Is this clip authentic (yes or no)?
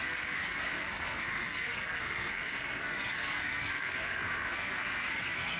no